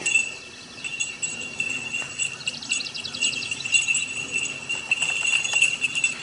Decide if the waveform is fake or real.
real